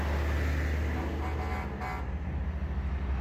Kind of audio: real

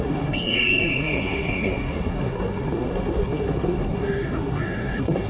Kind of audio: fake